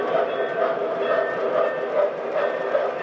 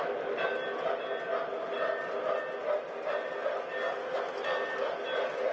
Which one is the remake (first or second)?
first